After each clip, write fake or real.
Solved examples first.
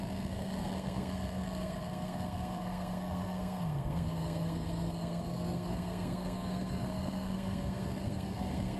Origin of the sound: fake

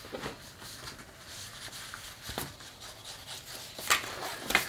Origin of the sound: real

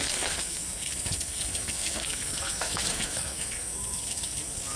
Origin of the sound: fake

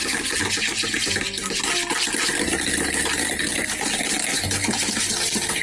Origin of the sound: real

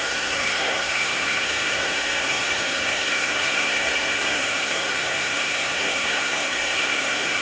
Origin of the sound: fake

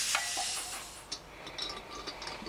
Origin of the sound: real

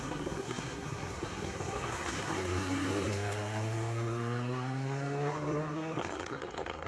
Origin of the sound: fake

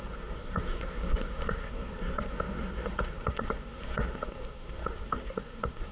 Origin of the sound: fake